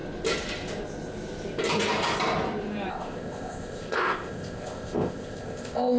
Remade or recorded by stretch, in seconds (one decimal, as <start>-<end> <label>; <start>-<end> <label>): 0.0-2.9 recorded; 2.9-6.0 remade